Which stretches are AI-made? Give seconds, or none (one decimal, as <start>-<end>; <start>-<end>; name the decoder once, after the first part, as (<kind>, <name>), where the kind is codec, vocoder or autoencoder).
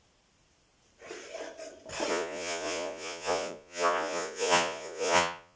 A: 2.1-5.6 (vocoder, Vocos)